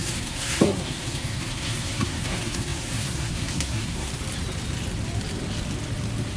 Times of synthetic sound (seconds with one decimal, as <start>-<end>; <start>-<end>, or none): 0.0-4.1